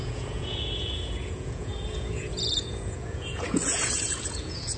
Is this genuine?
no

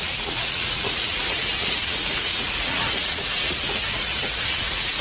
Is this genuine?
no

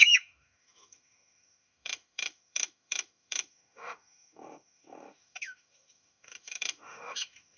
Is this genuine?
no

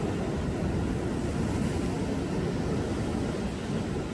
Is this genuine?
yes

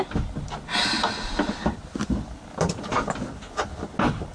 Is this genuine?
yes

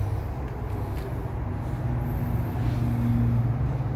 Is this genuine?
yes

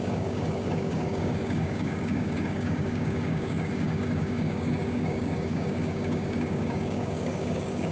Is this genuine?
no